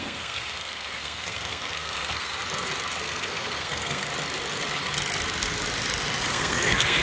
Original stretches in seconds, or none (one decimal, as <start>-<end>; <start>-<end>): 2.3-3.0; 4.1-6.3